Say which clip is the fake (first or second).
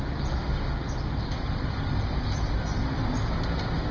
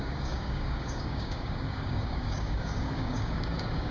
second